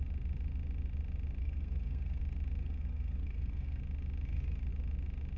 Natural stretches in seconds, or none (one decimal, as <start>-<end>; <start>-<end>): 0.0-1.4; 2.2-2.6; 3.8-5.4